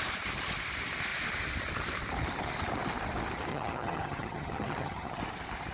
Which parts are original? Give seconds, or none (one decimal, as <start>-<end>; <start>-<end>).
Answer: 0.0-3.5; 5.2-5.7